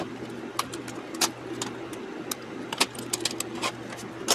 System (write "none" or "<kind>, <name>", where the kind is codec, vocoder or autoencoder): none